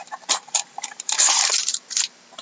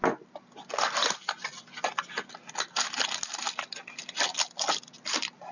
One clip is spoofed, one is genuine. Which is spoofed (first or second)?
first